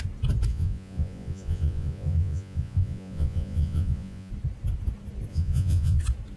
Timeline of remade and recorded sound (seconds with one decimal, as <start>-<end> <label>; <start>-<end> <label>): 0.0-0.5 recorded; 0.5-4.3 remade; 4.3-5.3 recorded; 5.3-6.0 remade; 6.0-6.4 recorded